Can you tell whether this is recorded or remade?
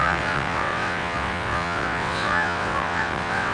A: remade